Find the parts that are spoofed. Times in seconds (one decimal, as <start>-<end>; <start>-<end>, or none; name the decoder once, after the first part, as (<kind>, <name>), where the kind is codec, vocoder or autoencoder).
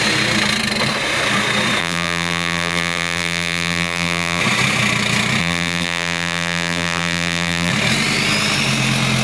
1.8-4.4 (vocoder, BigVGAN v2); 5.4-7.7